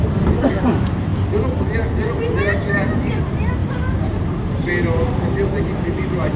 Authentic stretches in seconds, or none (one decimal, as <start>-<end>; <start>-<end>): 1.1-3.2; 3.6-4.3